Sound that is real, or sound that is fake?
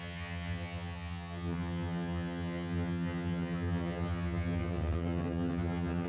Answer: fake